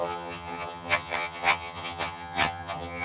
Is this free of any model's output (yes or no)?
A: no